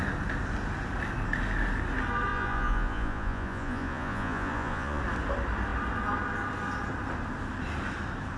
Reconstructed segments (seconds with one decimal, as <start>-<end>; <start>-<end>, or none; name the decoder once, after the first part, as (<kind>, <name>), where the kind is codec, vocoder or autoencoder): 2.3-5.0 (vocoder, Vocos)

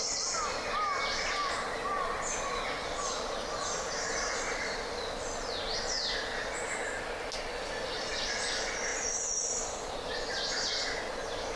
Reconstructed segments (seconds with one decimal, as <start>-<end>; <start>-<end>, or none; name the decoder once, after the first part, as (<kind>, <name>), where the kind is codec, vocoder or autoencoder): 1.4-5.5 (vocoder, BigVGAN v2); 8.9-9.9

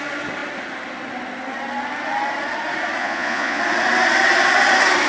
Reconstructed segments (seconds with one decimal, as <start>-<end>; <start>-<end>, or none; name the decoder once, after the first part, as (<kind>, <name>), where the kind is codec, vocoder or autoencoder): 3.0-3.6 (vocoder, Vocos)

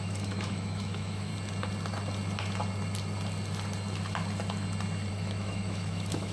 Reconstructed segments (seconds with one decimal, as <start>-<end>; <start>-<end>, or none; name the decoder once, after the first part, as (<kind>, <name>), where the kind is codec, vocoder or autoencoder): 0.0-1.3 (autoencoder, DAC-VAE); 5.1-6.3

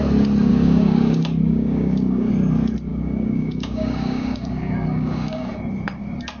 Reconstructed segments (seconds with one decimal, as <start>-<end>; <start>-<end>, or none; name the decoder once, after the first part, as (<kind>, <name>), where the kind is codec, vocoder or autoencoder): 0.5-2.3 (codec, DAC); 2.9-5.5